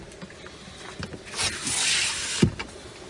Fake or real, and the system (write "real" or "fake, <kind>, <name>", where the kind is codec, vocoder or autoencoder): real